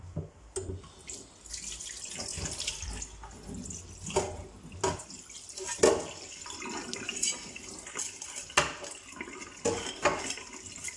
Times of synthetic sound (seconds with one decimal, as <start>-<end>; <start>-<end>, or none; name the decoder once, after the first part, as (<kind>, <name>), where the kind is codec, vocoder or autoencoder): none